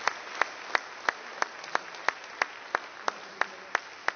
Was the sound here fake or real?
real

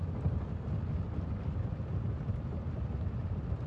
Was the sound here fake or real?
real